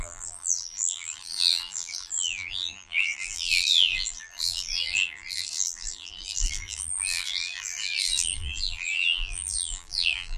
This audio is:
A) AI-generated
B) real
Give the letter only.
A